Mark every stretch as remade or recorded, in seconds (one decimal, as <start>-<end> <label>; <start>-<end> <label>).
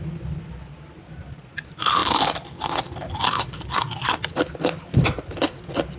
0.0-6.0 recorded